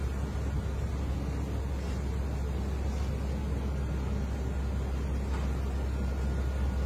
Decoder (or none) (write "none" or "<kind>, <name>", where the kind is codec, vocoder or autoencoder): none